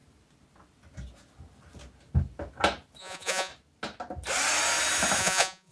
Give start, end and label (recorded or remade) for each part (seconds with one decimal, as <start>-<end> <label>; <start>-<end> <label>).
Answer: 0.0-3.0 recorded; 3.0-3.5 remade; 3.5-5.2 recorded; 5.2-5.7 remade